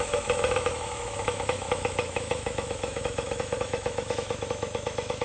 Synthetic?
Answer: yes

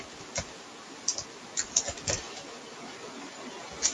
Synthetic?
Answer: no